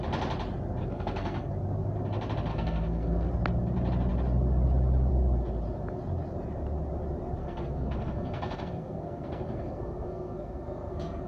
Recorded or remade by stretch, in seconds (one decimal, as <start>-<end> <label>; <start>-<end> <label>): 0.0-0.8 recorded; 0.8-1.5 remade; 1.5-2.5 recorded; 2.5-3.3 remade; 3.3-7.4 recorded; 7.4-11.3 remade